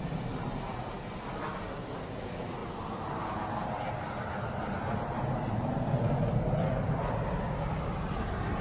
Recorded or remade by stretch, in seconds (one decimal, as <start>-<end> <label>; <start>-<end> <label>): 0.0-8.6 recorded